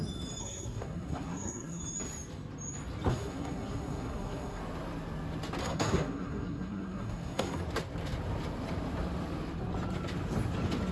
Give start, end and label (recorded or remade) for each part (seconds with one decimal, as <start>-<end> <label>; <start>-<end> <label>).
0.0-0.4 recorded; 0.4-1.8 remade; 1.8-3.1 recorded; 3.1-4.6 remade; 4.6-5.6 recorded; 5.6-7.6 remade; 7.6-10.9 recorded